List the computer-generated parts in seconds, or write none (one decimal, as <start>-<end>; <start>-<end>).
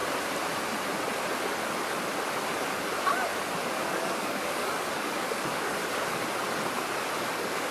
3.7-5.8; 7.3-7.7